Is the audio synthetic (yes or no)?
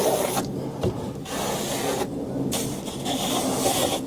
no